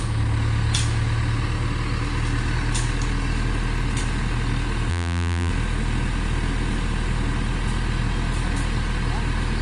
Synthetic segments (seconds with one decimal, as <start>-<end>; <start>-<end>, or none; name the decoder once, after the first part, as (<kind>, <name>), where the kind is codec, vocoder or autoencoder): 4.9-5.5 (vocoder, BigVGAN v2)